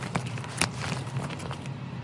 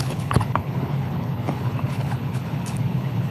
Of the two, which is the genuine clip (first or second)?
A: first